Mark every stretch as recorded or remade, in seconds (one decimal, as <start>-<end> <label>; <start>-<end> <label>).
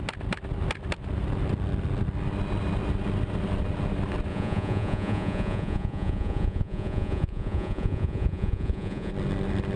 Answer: 0.0-4.3 recorded; 4.3-9.1 remade; 9.1-9.8 recorded